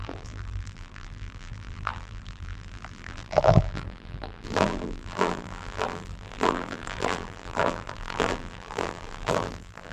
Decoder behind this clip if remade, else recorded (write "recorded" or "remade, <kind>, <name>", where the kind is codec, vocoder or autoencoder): remade, vocoder, BigVGAN v2